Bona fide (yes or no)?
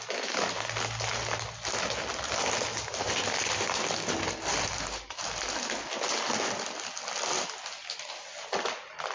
yes